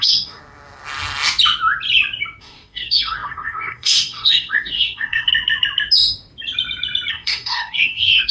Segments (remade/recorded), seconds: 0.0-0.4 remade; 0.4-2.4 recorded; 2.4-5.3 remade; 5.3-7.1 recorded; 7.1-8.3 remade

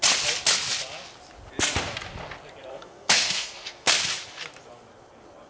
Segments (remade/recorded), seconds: 0.0-2.7 recorded; 2.7-3.9 remade; 3.9-5.5 recorded

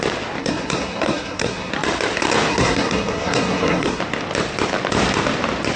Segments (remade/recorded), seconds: 0.0-0.4 recorded; 0.4-1.7 remade; 1.7-2.5 recorded; 2.5-4.0 remade; 4.0-5.8 recorded

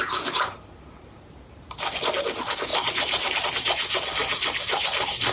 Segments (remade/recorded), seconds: 0.0-5.3 recorded

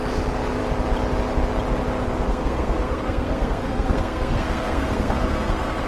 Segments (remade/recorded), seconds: 0.0-2.3 recorded; 2.3-5.9 remade

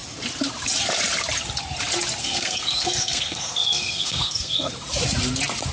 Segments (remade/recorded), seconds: 0.0-2.2 recorded; 2.2-4.7 remade; 4.7-5.7 recorded

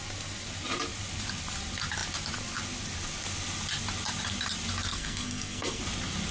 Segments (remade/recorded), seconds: 0.0-4.9 recorded; 4.9-5.8 remade; 5.8-6.3 recorded

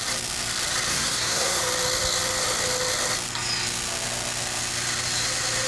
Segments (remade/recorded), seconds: 0.0-0.9 recorded; 0.9-1.6 remade; 1.6-5.7 recorded